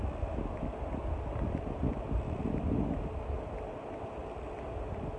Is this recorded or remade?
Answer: recorded